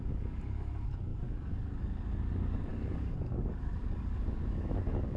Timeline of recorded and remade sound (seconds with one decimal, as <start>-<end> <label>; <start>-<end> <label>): 0.0-5.2 remade